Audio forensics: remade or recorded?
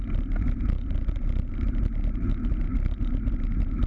recorded